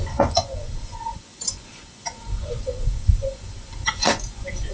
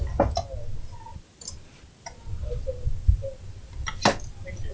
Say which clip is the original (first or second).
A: second